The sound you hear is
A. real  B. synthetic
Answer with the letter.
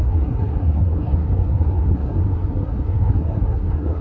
B